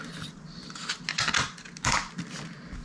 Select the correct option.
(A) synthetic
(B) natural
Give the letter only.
B